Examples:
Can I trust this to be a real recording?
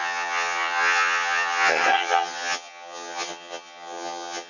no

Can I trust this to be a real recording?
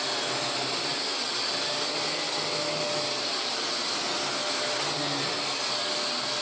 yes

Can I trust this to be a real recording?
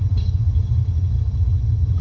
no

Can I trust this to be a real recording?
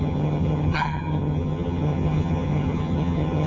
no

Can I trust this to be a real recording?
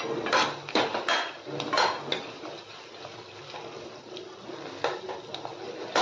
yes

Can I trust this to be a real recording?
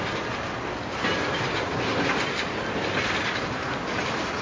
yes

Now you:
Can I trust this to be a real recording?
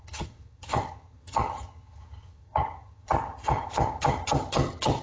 no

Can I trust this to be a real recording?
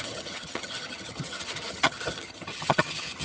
no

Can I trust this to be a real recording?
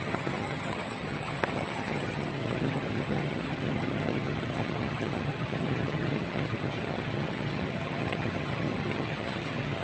no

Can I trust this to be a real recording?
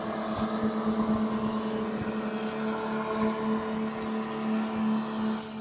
yes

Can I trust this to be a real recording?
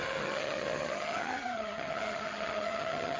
no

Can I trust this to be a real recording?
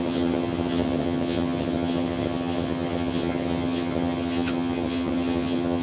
no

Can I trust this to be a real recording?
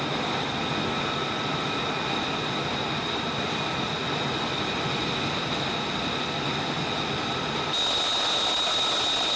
yes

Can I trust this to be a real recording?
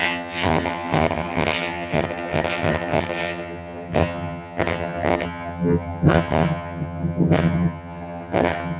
no